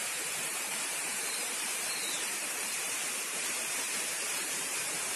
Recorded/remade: remade